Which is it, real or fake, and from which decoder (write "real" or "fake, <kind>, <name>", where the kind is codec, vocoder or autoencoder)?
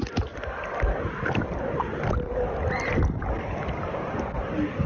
fake, vocoder, BigVGAN v2